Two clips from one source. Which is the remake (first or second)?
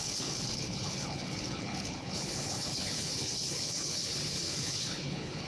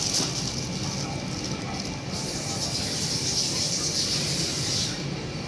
first